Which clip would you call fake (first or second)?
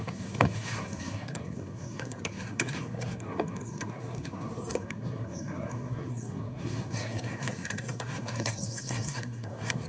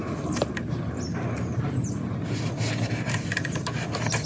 first